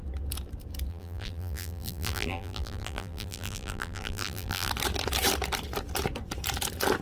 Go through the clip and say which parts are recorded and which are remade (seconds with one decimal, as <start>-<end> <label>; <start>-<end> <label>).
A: 0.0-0.9 recorded; 0.9-4.7 remade; 4.7-7.0 recorded